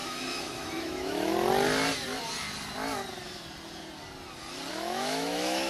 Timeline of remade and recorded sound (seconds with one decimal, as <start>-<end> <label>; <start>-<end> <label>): 0.0-1.3 remade; 1.3-4.7 recorded; 4.7-5.7 remade